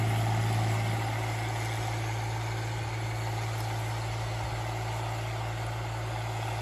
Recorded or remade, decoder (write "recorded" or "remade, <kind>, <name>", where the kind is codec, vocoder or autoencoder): recorded